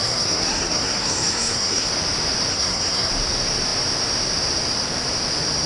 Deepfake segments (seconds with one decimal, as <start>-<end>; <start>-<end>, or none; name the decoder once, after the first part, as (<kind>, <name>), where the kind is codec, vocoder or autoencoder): 0.0-1.9 (codec, SNAC); 2.5-3.1